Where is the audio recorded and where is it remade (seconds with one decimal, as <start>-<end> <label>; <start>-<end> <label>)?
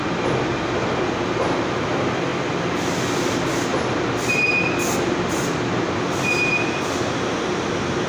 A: 0.0-8.1 recorded